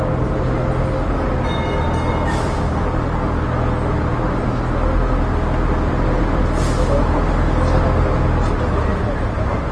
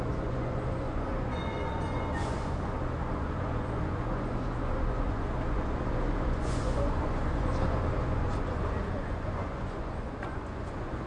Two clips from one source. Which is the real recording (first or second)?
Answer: first